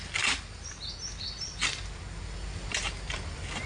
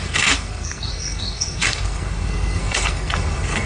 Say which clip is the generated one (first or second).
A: second